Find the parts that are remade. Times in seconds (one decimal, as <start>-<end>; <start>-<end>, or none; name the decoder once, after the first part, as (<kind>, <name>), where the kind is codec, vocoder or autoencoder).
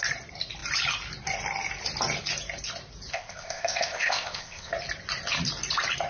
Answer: 3.1-4.7 (codec, ZipCodec)